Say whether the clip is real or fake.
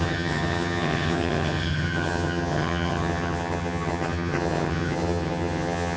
fake